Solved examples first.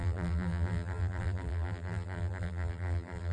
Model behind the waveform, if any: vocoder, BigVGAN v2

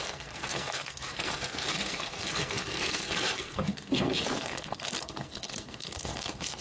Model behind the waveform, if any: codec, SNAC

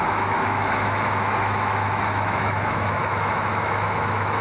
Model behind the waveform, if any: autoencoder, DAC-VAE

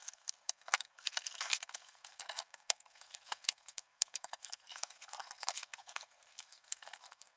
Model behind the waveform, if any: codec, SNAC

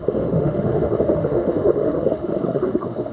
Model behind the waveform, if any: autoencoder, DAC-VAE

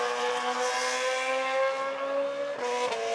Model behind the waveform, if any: none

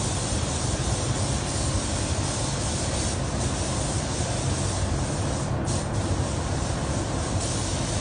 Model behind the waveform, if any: none